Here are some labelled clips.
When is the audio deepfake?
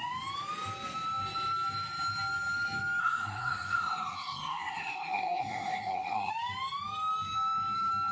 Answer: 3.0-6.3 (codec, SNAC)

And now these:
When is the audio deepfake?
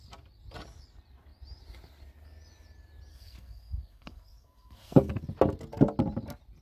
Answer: 3.1-5.1 (codec, SNAC)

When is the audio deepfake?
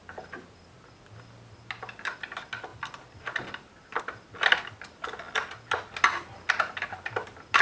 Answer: none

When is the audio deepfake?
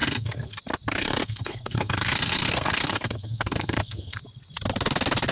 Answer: 0.0-0.6 (codec, SNAC); 1.0-4.2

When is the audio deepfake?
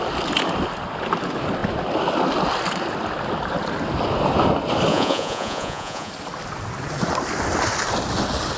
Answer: 4.9-6.1 (vocoder, Vocos)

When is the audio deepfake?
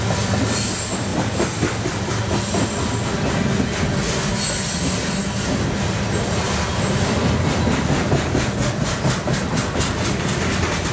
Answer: none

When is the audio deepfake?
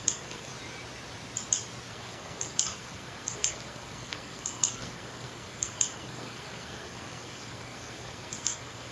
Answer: 0.0-0.5 (codec, SNAC); 1.9-8.9